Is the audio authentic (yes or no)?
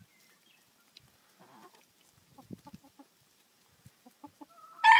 no